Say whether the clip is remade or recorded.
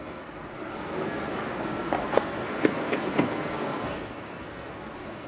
remade